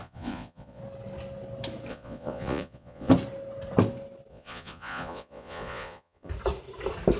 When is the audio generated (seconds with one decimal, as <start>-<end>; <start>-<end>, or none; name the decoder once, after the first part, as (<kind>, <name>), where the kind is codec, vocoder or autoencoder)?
0.0-0.8 (vocoder, Vocos); 1.9-3.1; 4.3-6.3